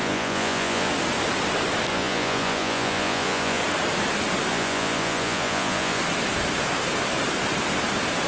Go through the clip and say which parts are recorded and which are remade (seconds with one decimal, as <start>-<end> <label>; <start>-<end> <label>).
0.0-0.9 remade; 0.9-1.9 recorded; 1.9-3.6 remade; 3.6-4.5 recorded; 4.5-6.0 remade; 6.0-8.3 recorded